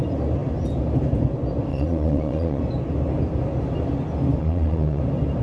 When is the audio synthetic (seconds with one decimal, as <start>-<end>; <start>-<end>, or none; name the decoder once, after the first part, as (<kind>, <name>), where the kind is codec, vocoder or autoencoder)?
1.7-2.6 (vocoder, Vocos); 4.4-5.0